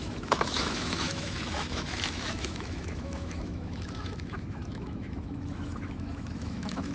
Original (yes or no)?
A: no